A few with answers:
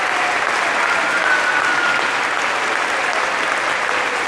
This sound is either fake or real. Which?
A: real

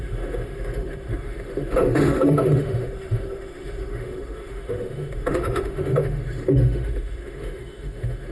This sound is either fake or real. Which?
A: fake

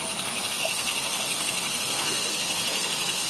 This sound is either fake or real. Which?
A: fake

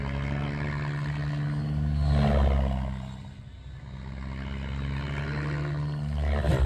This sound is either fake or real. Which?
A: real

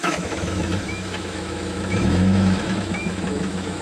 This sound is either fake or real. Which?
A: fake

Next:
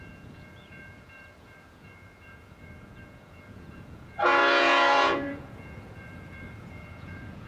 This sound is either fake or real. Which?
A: fake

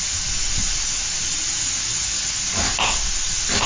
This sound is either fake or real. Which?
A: real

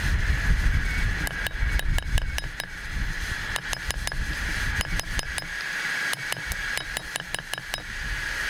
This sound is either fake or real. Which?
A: real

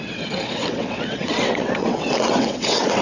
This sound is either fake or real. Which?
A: fake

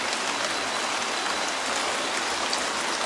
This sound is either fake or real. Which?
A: real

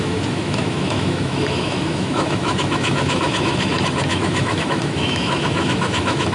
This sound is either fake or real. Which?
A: fake